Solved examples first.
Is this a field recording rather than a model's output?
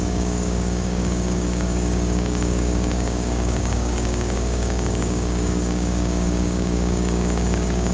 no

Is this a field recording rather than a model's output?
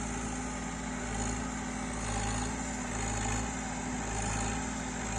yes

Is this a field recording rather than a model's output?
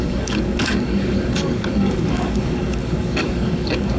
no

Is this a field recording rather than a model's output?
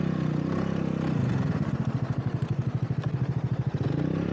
yes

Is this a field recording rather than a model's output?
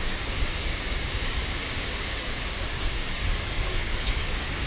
no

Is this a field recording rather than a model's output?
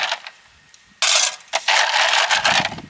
yes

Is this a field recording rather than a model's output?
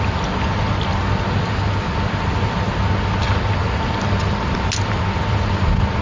yes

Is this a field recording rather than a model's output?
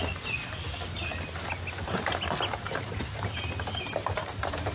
yes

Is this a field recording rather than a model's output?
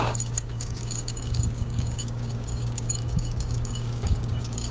no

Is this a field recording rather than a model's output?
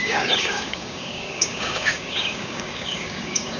no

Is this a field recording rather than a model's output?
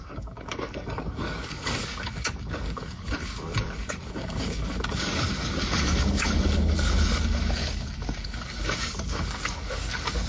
no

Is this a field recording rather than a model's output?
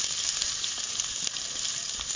yes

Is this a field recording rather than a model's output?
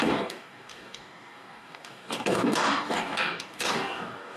no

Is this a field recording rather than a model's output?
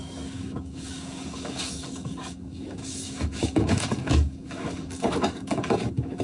no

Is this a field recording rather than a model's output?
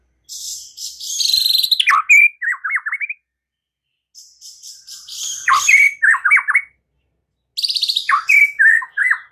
yes